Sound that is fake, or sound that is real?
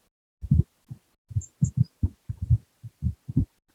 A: real